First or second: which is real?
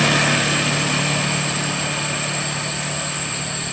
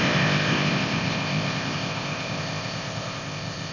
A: first